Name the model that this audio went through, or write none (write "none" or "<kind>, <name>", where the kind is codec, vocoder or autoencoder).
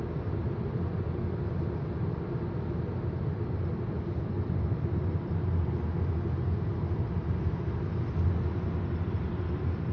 none